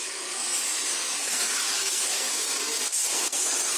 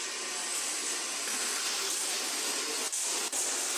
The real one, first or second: second